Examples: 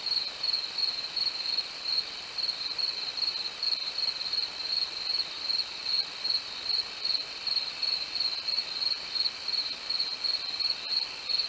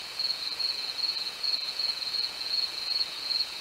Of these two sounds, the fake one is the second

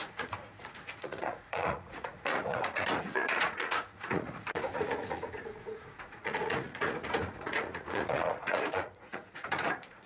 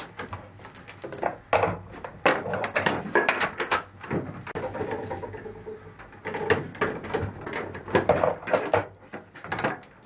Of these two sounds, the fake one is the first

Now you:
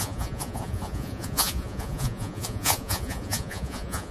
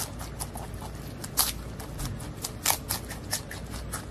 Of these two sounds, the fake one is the first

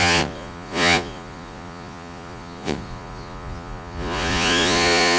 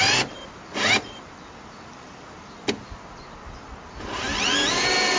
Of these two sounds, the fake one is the first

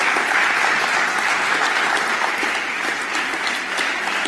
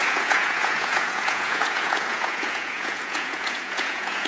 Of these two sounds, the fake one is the second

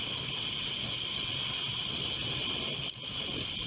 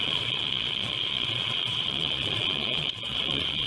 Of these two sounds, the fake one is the second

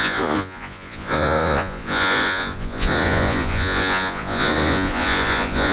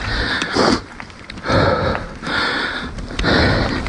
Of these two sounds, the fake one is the first